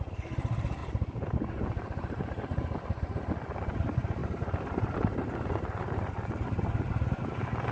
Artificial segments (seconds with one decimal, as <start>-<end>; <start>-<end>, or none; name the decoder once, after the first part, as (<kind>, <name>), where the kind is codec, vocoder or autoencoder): 0.8-3.3 (vocoder, BigVGAN v2); 4.2-6.1